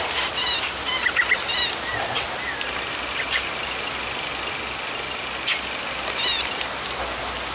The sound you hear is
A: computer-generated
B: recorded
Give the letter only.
B